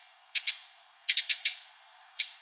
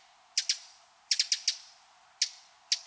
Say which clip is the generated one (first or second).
first